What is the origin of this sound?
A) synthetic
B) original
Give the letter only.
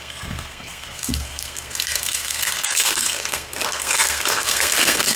A